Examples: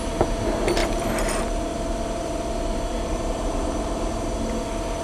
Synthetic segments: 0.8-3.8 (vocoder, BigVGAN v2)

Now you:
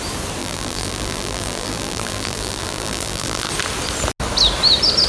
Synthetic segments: 0.4-3.5 (vocoder, BigVGAN v2)